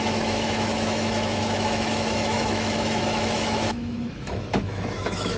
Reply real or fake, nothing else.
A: fake